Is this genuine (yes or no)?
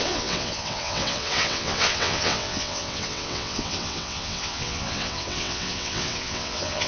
no